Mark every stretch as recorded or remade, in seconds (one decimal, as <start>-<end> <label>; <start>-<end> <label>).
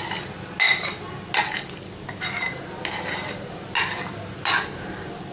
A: 0.0-5.3 recorded